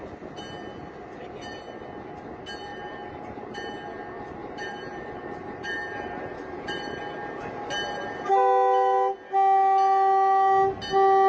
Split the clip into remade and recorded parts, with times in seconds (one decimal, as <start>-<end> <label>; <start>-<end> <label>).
0.0-2.7 recorded; 2.7-3.7 remade; 3.7-4.4 recorded; 4.4-7.0 remade; 7.0-11.3 recorded